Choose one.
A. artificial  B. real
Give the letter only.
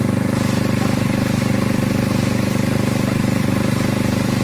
B